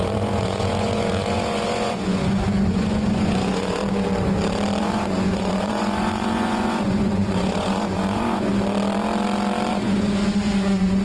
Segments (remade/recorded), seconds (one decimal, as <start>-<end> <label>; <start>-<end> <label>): 0.0-3.8 remade; 3.8-4.8 recorded; 4.8-8.5 remade; 8.5-9.7 recorded; 9.7-11.0 remade

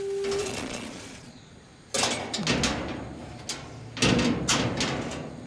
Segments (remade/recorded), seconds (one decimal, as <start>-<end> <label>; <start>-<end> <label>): 0.0-0.4 recorded; 0.4-1.5 remade; 1.5-5.5 recorded

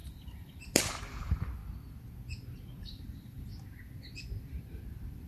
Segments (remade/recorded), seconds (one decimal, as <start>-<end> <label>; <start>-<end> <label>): 0.0-1.6 remade; 1.6-2.8 recorded; 2.8-3.5 remade; 3.5-5.3 recorded

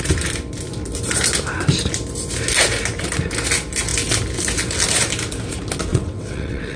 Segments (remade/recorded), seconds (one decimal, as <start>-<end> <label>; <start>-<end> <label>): 0.0-5.9 recorded; 5.9-6.8 remade

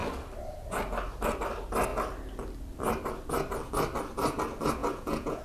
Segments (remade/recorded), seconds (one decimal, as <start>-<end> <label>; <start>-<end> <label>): 0.0-4.8 recorded; 4.8-5.4 remade

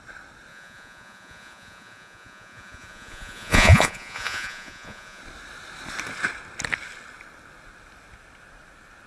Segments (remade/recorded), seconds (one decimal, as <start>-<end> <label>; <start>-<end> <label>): 0.0-0.5 recorded; 0.5-5.2 remade; 5.2-9.1 recorded

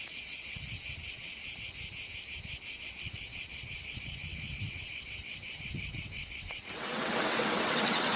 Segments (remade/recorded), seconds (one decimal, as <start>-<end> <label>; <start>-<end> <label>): 0.0-1.4 remade; 1.4-2.8 recorded; 2.8-8.2 remade